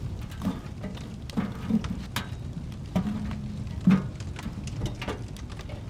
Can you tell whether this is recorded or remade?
recorded